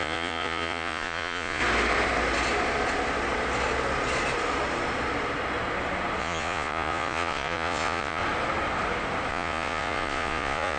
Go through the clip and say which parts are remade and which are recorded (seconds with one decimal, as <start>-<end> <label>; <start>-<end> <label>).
0.0-1.6 remade; 1.6-6.2 recorded; 6.2-8.2 remade; 8.2-9.3 recorded; 9.3-10.8 remade